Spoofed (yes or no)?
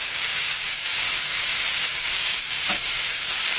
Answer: yes